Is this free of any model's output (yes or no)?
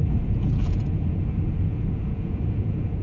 no